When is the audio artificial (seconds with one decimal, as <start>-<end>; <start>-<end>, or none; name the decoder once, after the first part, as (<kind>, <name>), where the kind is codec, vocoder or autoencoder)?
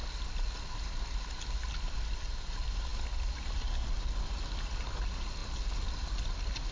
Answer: none